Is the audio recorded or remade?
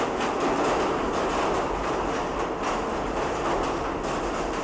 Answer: recorded